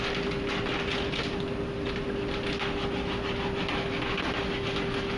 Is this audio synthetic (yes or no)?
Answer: no